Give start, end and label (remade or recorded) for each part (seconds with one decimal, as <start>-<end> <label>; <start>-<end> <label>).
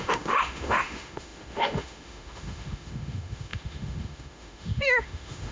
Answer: 0.0-5.5 remade